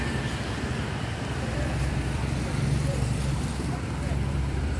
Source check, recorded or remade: remade